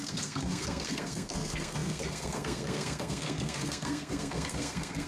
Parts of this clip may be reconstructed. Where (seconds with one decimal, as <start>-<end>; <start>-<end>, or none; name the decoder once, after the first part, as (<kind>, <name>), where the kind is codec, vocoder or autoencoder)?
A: 0.0-5.1 (codec, SNAC)